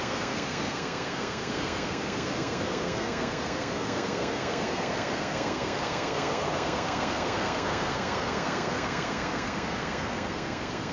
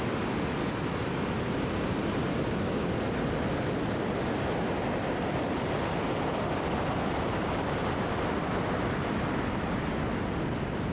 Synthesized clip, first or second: first